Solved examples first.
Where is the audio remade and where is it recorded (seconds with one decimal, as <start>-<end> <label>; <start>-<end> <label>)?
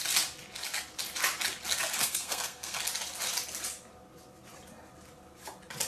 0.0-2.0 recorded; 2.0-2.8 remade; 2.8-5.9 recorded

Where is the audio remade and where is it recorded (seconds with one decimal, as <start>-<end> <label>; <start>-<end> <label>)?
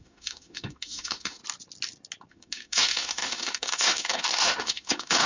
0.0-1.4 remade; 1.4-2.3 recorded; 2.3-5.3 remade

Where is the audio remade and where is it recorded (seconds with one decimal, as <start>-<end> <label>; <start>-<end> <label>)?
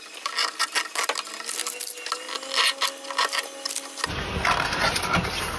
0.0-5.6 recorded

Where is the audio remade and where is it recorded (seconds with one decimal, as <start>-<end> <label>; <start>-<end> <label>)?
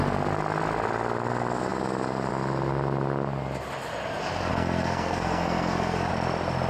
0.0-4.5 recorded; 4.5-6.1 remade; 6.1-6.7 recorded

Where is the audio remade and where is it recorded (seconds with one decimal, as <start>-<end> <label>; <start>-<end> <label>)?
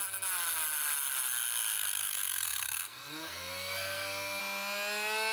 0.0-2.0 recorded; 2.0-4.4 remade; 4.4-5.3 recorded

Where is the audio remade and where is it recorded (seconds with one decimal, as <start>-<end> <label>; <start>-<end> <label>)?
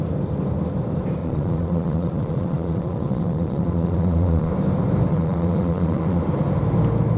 0.0-1.2 recorded; 1.2-4.5 remade; 4.5-5.1 recorded; 5.1-6.2 remade; 6.2-7.2 recorded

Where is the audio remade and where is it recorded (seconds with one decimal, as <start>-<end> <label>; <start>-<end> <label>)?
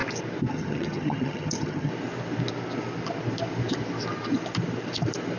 0.0-0.5 recorded; 0.5-1.9 remade; 1.9-5.4 recorded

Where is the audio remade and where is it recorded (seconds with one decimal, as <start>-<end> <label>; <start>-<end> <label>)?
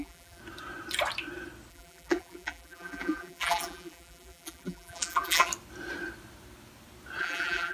0.0-0.4 remade; 0.4-1.7 recorded; 1.7-5.5 remade; 5.5-7.2 recorded; 7.2-7.7 remade